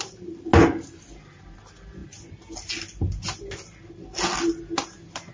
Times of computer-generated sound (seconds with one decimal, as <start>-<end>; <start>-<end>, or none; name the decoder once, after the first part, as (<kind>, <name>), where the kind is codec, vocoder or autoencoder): none